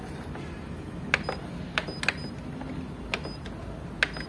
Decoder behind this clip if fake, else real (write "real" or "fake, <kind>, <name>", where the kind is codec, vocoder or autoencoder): real